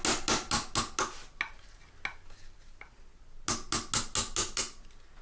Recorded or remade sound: recorded